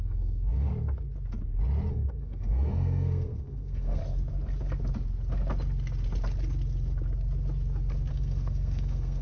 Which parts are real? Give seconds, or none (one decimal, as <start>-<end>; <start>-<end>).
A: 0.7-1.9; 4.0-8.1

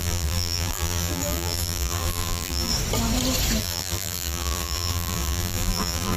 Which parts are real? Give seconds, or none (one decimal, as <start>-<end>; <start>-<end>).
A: 2.7-3.6

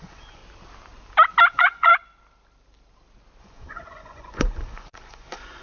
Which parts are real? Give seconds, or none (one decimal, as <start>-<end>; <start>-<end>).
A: 0.4-1.5; 1.9-3.4

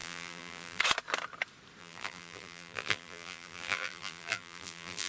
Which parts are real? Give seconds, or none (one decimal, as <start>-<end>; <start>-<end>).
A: 0.8-1.8